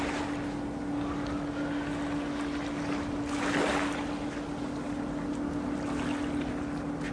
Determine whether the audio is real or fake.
real